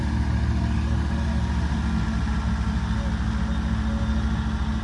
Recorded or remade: recorded